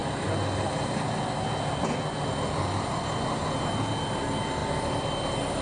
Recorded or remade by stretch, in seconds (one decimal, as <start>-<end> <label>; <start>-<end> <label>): 0.0-5.6 recorded